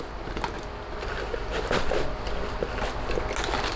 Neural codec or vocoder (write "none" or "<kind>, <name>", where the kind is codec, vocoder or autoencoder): none